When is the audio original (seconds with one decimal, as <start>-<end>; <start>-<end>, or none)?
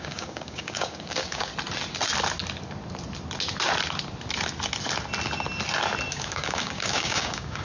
1.5-6.1